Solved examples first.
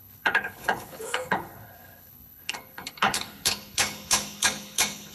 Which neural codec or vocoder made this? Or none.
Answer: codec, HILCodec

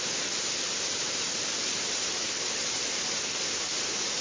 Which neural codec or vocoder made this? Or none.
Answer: none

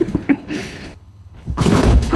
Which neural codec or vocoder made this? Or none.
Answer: codec, HILCodec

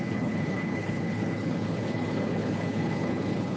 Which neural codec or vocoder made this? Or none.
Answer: codec, HILCodec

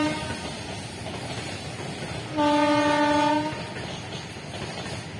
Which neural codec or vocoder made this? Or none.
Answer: none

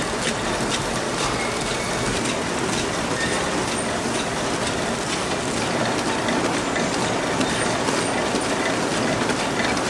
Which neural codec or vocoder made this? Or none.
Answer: none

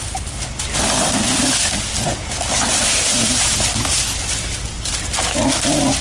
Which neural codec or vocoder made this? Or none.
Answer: none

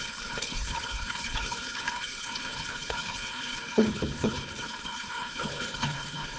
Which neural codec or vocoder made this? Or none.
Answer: codec, HILCodec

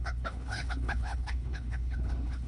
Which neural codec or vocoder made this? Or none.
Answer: codec, HILCodec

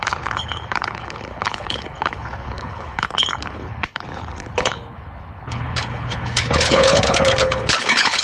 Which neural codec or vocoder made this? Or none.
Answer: codec, HILCodec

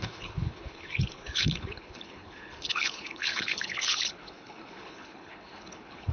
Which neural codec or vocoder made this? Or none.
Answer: codec, HILCodec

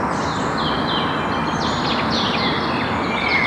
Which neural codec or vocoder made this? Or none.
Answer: none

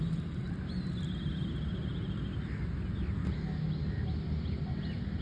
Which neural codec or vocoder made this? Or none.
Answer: none